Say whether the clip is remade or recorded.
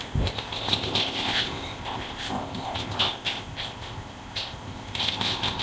remade